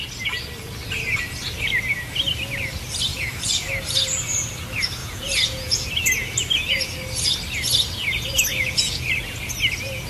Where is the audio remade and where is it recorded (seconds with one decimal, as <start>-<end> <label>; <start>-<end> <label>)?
0.0-3.1 recorded; 3.1-3.7 remade; 3.7-5.0 recorded; 5.0-5.9 remade; 5.9-8.5 recorded; 8.5-9.1 remade; 9.1-10.1 recorded